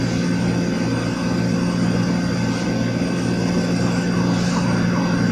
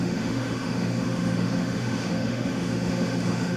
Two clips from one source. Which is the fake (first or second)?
second